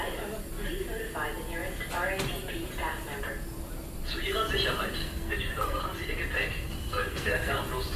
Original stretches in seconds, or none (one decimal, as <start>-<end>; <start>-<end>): 0.0-5.0; 5.8-6.4; 7.6-8.0